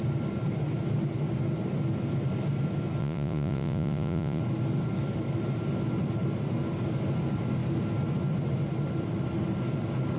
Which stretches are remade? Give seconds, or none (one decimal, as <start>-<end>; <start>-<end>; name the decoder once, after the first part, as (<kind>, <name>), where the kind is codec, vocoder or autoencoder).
3.0-4.4 (vocoder, Vocos)